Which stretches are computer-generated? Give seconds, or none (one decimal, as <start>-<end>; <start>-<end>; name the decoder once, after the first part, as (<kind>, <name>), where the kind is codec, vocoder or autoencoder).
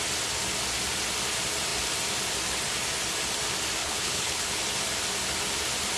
3.8-4.6 (codec, HILCodec)